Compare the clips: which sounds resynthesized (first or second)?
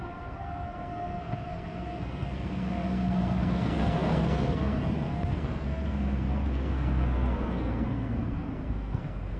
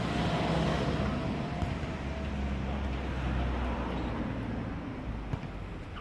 first